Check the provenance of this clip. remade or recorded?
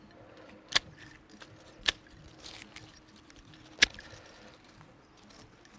recorded